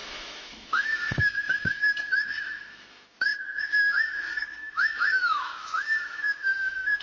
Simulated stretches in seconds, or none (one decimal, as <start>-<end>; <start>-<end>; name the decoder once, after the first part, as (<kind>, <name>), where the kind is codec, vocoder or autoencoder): 0.0-7.0 (autoencoder, DAC-VAE)